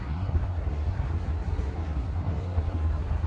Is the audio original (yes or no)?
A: no